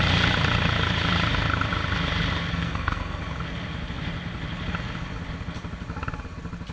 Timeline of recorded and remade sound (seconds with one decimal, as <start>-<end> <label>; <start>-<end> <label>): 0.0-2.5 recorded; 2.5-3.2 remade; 3.2-6.7 recorded